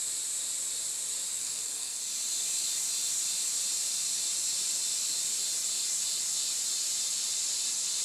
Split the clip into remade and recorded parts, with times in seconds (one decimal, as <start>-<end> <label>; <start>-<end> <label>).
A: 0.0-1.3 recorded; 1.3-2.0 remade; 2.0-8.0 recorded